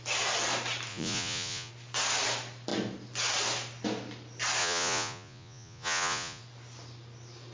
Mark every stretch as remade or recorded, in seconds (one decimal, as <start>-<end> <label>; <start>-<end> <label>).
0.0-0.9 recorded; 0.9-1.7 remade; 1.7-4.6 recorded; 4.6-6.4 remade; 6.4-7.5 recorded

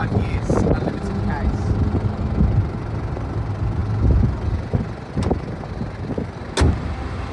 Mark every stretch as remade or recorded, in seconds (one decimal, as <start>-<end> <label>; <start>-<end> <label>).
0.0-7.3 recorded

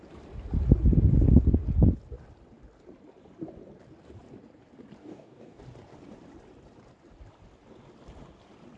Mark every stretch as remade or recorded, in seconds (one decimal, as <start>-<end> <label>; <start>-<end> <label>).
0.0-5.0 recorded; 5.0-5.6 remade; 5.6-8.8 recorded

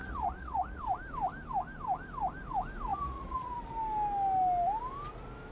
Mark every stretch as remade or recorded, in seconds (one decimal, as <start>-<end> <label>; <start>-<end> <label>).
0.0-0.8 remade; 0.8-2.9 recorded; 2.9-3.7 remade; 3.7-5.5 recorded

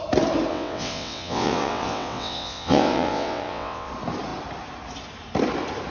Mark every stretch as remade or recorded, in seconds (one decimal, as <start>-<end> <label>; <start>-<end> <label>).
0.0-0.5 recorded; 0.5-3.9 remade; 3.9-5.9 recorded